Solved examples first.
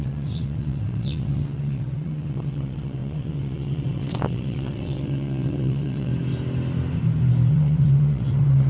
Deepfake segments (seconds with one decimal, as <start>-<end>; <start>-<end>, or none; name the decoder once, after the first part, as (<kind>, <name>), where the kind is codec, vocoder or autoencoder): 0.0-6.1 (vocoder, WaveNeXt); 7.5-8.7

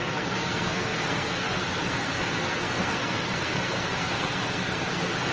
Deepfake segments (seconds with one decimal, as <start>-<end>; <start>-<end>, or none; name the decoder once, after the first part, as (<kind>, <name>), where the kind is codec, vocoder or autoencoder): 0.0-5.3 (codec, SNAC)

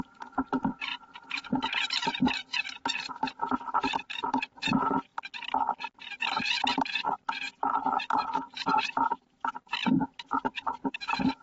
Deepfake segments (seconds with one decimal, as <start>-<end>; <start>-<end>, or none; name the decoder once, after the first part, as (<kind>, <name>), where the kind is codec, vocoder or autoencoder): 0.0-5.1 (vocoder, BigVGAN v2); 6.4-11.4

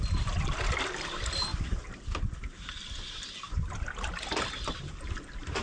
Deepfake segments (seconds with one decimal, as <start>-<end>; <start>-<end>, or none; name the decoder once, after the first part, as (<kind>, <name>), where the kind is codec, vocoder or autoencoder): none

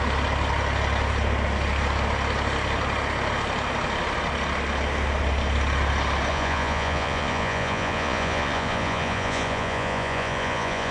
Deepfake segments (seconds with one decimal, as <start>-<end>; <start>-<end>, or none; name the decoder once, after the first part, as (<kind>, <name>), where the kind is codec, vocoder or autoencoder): 6.3-10.9 (vocoder, Vocos)

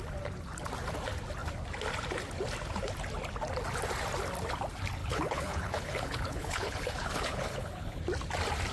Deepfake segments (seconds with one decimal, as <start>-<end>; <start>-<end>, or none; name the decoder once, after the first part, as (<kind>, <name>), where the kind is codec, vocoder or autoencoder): 5.0-8.0 (codec, HILCodec)

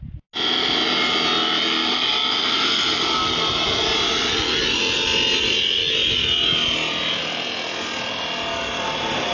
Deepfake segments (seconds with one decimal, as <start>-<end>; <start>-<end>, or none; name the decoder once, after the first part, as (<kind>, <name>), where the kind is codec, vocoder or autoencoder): none

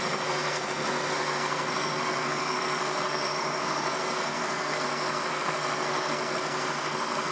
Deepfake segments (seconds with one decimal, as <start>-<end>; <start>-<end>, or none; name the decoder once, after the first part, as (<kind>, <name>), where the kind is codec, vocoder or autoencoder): 0.0-7.3 (codec, SNAC)